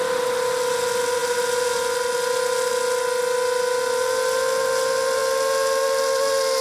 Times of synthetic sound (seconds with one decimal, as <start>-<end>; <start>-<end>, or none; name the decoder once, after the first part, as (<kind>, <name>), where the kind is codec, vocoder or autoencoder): none